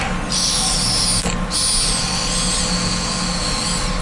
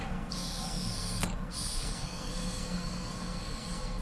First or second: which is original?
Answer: first